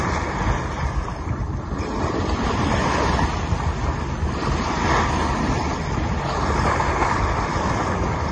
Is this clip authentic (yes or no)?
yes